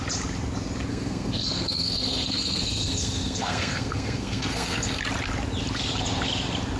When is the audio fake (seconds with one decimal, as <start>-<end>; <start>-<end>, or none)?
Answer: 0.9-5.0